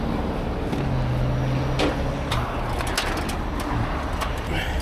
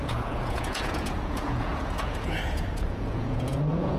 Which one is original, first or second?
first